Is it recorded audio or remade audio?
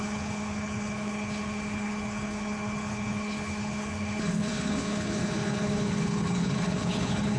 remade